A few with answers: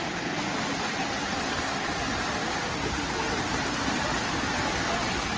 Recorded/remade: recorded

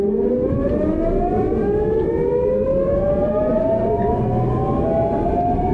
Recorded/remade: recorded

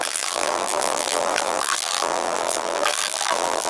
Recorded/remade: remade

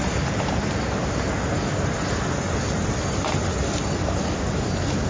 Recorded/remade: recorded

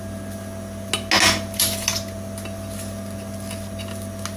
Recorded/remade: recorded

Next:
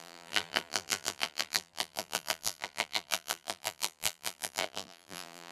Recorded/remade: remade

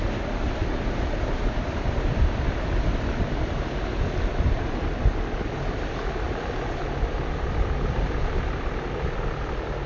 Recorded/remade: recorded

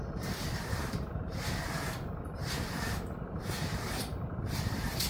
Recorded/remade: remade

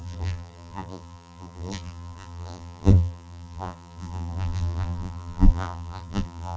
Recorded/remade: remade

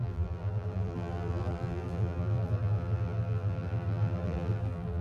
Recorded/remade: remade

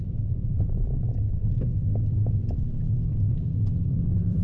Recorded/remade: remade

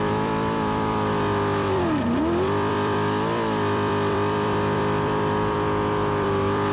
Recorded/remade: remade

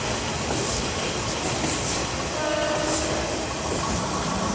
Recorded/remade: remade